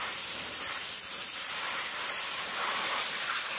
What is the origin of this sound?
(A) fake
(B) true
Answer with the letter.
A